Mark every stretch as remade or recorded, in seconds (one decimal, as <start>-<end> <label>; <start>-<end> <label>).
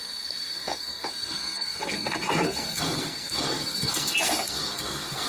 0.0-5.3 remade